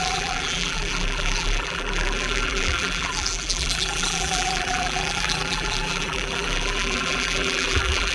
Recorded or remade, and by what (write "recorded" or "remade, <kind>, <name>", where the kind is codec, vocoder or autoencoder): remade, vocoder, BigVGAN v2